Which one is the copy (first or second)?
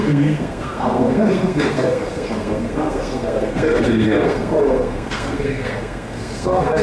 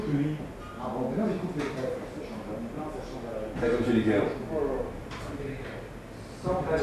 first